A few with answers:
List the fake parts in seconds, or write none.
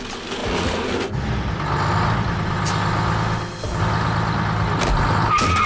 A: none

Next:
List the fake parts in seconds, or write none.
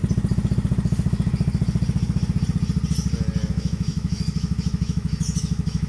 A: 3.5-5.9 (autoencoder, DAC-VAE)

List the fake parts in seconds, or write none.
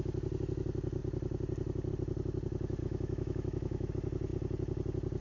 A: 2.8-3.9 (autoencoder, DAC-VAE)